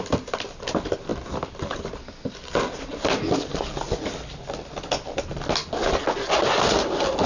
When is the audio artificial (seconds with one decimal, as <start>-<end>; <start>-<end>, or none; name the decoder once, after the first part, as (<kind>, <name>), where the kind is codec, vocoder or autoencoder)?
none